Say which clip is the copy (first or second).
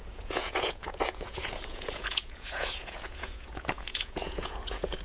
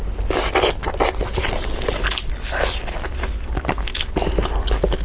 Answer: first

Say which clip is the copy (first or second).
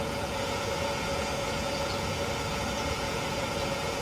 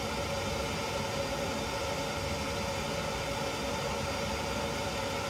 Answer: first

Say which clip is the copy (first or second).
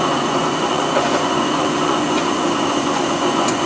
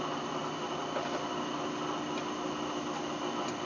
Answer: first